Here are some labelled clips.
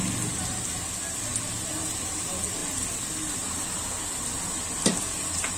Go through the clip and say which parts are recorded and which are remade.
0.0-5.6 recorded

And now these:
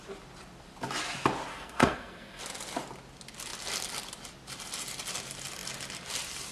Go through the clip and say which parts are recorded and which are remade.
0.0-1.5 recorded; 1.5-2.4 remade; 2.4-6.5 recorded

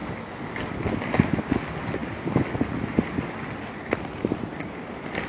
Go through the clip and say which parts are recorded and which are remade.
0.0-5.3 recorded

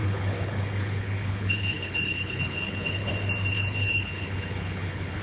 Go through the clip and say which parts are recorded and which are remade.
0.0-3.1 remade; 3.1-3.5 recorded; 3.5-5.2 remade

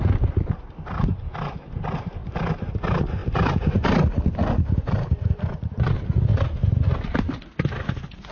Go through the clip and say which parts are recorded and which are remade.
0.0-2.2 recorded; 2.2-2.7 remade; 2.7-8.3 recorded